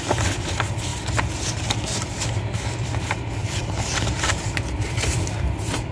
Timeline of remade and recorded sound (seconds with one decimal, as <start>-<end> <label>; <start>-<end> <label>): 0.0-0.9 remade; 0.9-2.0 recorded; 2.0-5.9 remade

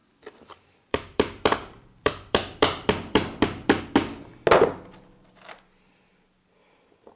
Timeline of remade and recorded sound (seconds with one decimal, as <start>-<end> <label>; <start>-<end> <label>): 0.0-3.8 remade; 3.8-7.2 recorded

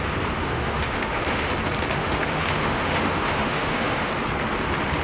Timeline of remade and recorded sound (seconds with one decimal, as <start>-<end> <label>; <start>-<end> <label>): 0.0-0.4 recorded; 0.4-1.5 remade; 1.5-2.0 recorded; 2.0-4.1 remade; 4.1-5.0 recorded

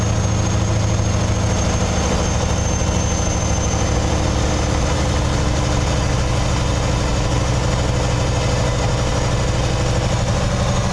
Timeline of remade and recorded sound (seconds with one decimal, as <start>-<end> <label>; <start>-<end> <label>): 0.0-10.9 recorded

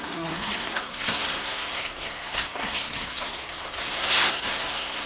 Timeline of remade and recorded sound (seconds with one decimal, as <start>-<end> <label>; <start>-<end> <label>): 0.0-5.1 remade

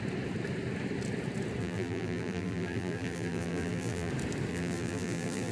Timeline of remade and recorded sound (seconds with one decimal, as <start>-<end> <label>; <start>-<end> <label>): 0.0-1.6 recorded; 1.6-4.1 remade; 4.1-4.5 recorded; 4.5-5.5 remade

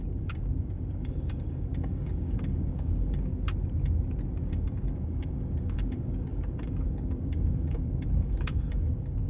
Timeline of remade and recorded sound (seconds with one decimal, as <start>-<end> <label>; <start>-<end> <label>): 0.0-3.3 remade; 3.3-4.5 recorded; 4.5-9.3 remade

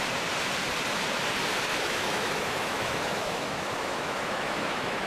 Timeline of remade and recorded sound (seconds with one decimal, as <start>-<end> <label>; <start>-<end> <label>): 0.0-1.7 recorded; 1.7-5.1 remade